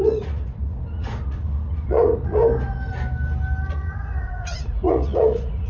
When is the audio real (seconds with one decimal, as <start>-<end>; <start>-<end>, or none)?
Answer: 2.4-3.7